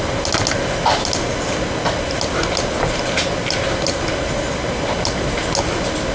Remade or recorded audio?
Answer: recorded